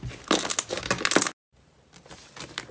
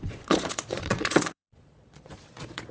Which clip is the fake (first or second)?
second